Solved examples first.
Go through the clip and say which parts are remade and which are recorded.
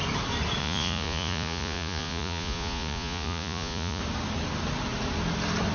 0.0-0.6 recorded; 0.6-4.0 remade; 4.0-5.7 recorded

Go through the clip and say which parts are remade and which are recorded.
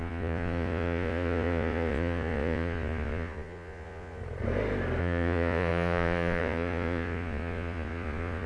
0.0-4.2 remade; 4.2-5.0 recorded; 5.0-8.5 remade